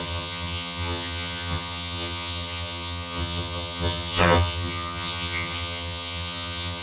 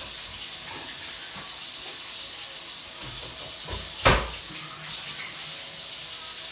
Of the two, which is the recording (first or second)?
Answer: second